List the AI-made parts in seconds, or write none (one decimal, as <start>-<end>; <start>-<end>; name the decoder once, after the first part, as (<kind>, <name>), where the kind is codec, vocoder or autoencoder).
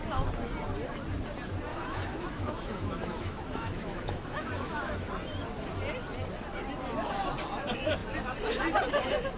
1.7-5.1 (autoencoder, DAC-VAE)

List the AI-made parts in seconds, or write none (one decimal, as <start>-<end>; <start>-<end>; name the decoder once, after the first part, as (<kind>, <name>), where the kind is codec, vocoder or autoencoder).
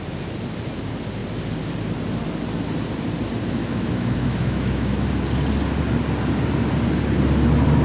3.6-5.1 (autoencoder, DAC-VAE)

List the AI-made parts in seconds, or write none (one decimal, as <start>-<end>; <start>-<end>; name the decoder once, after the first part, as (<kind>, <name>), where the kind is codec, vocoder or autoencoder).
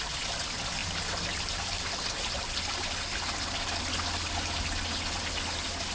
none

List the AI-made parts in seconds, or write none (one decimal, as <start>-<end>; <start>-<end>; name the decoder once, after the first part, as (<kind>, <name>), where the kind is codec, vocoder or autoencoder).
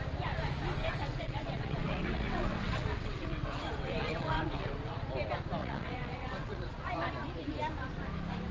0.8-4.7 (vocoder, WaveNeXt); 5.6-6.7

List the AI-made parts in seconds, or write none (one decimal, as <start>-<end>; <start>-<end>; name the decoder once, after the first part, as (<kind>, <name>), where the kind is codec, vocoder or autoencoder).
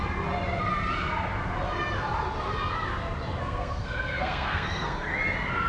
3.4-5.1 (codec, SNAC)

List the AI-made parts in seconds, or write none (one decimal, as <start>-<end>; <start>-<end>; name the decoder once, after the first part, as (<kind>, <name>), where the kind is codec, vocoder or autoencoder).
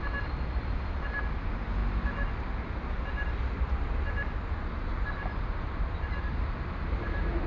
none